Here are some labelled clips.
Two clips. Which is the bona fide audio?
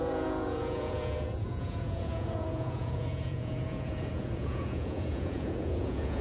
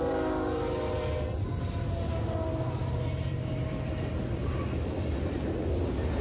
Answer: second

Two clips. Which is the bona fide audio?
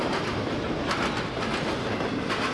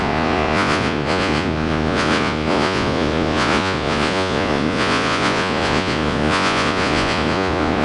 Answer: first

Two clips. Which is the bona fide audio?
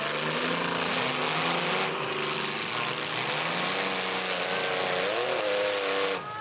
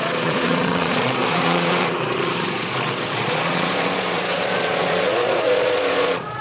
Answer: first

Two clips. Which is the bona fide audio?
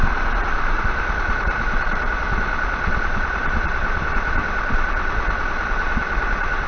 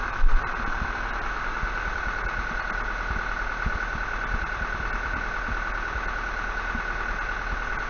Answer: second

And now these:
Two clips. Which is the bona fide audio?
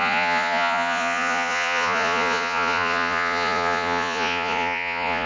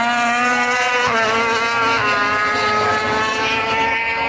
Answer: second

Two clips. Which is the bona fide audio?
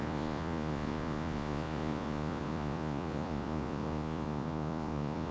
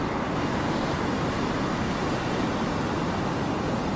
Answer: second